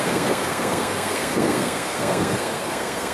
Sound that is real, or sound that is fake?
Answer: fake